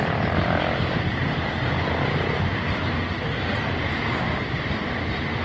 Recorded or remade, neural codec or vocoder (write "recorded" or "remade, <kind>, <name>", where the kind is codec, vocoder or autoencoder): recorded